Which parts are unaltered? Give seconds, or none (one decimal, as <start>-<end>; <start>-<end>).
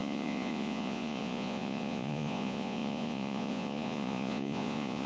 none